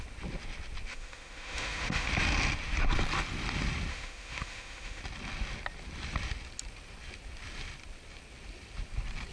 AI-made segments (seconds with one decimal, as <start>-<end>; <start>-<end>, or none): 0.9-2.1; 3.9-5.0